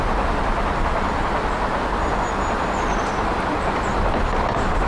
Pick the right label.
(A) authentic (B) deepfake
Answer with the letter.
A